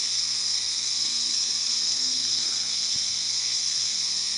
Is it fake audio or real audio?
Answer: fake